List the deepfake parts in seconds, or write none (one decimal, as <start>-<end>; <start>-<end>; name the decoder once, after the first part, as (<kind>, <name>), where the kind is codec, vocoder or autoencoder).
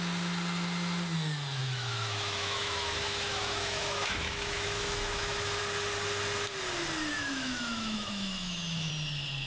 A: 1.6-5.6 (autoencoder, DAC-VAE); 7.1-8.9